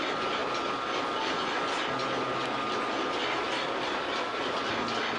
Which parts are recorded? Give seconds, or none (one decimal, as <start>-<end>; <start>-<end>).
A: 0.0-5.2